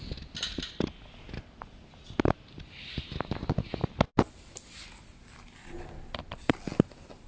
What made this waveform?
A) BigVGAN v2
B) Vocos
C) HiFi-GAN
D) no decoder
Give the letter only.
D